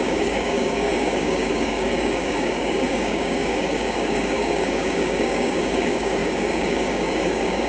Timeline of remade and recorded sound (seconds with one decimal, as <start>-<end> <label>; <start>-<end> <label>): 0.0-7.7 remade